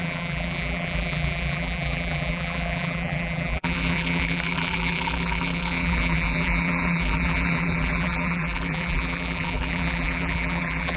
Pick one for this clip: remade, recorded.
remade